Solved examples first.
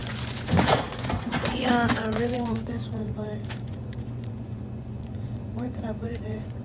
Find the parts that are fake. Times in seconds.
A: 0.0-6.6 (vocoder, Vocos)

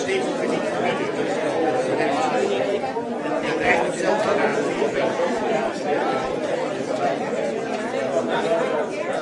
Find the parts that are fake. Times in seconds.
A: 4.5-6.6 (vocoder, BigVGAN v2)

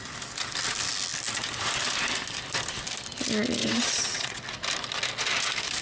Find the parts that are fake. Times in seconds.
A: 3.6-4.4 (vocoder, WaveNeXt)

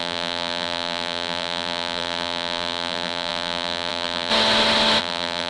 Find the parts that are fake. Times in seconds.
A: 0.0-4.3 (vocoder, BigVGAN v2); 5.0-5.5

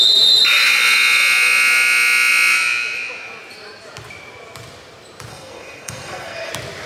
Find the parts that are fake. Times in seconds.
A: 5.3-6.5 (codec, SNAC)

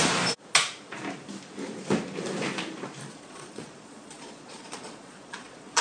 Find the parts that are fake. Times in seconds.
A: 3.0-5.8 (vocoder, Vocos)

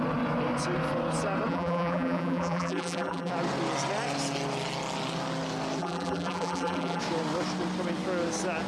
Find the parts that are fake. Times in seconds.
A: 1.5-3.3 (vocoder, BigVGAN v2); 5.8-7.0

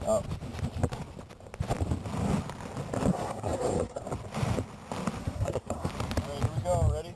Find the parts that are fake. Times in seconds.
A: 3.1-4.0 (codec, SNAC); 5.2-5.9